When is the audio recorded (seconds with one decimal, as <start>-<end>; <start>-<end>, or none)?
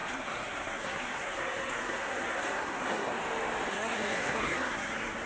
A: 3.2-3.7